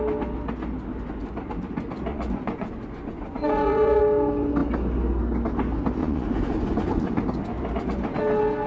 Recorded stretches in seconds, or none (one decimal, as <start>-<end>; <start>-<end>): 0.0-2.1; 4.0-6.0; 7.2-8.7